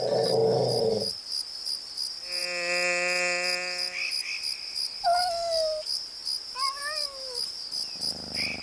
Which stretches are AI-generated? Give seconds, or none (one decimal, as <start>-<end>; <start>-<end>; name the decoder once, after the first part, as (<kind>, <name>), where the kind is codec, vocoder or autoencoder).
none